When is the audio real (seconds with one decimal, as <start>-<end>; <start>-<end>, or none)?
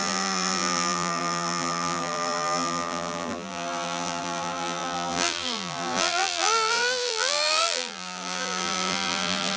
none